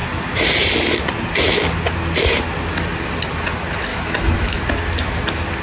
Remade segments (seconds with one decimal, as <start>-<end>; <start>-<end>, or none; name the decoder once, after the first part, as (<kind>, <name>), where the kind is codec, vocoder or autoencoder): 3.9-4.6 (autoencoder, DAC-VAE)